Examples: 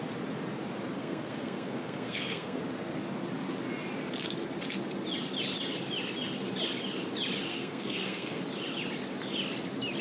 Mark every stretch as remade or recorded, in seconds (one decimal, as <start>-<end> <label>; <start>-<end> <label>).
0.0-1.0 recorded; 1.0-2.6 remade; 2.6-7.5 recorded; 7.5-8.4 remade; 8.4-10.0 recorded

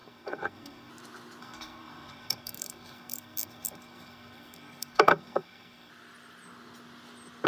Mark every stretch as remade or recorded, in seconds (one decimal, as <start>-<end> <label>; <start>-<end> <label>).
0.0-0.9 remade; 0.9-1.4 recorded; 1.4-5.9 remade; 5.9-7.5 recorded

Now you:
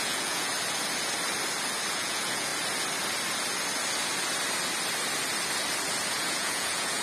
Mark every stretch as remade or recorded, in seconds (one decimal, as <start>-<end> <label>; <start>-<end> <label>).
0.0-0.5 remade; 0.5-1.9 recorded; 1.9-2.5 remade; 2.5-6.1 recorded; 6.1-7.0 remade

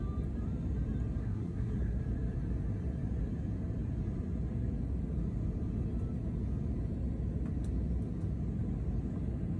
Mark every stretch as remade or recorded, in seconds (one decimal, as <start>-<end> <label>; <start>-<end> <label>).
0.0-1.2 recorded; 1.2-2.0 remade; 2.0-9.6 recorded

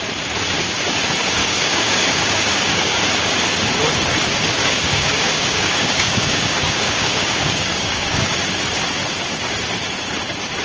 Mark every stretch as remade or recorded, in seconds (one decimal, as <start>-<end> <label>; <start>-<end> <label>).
0.0-1.4 recorded; 1.4-3.0 remade; 3.0-4.6 recorded; 4.6-8.3 remade; 8.3-10.6 recorded